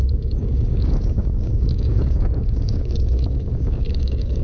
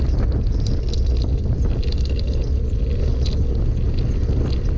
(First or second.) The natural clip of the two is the second